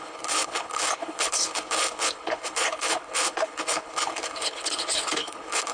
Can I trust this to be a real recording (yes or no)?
no